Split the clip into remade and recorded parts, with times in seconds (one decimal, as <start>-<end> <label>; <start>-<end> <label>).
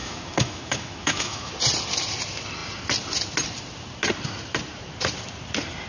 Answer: 0.0-1.5 remade; 1.5-5.9 recorded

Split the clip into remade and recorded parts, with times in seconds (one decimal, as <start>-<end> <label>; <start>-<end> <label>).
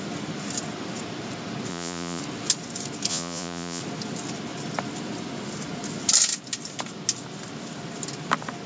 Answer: 0.0-1.7 recorded; 1.7-2.2 remade; 2.2-3.1 recorded; 3.1-3.8 remade; 3.8-8.7 recorded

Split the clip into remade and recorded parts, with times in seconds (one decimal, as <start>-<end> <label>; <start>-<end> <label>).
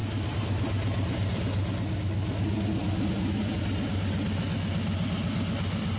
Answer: 0.0-6.0 recorded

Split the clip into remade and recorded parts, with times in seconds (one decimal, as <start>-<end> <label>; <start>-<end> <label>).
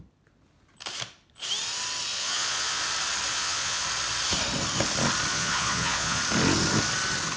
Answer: 0.0-2.1 recorded; 2.1-2.8 remade; 2.8-3.3 recorded; 3.3-3.8 remade; 3.8-5.3 recorded; 5.3-6.2 remade; 6.2-7.4 recorded